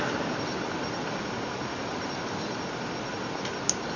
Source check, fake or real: real